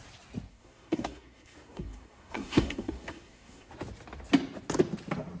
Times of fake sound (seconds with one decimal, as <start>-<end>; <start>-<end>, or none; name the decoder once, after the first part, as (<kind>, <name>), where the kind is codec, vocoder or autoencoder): 0.5-3.7 (codec, SNAC)